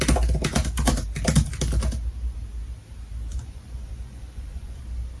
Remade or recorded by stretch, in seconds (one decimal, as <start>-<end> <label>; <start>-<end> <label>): 0.0-3.3 recorded; 3.3-4.8 remade; 4.8-5.2 recorded